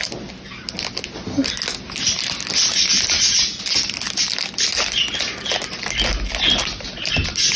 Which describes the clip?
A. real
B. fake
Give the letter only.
A